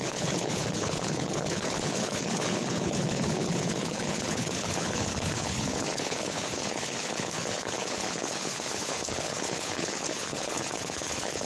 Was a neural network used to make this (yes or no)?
yes